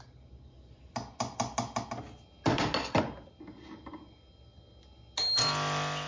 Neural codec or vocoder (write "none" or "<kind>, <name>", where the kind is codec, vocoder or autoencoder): none